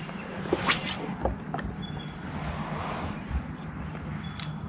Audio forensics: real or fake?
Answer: real